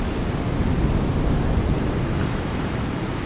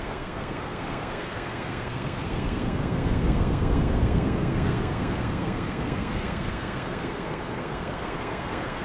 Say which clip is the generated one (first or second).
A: second